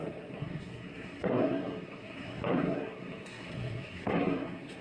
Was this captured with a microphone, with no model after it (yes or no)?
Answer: no